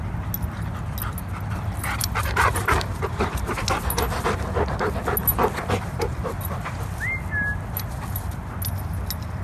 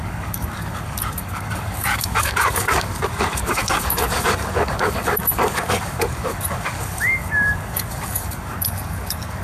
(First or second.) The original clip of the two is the first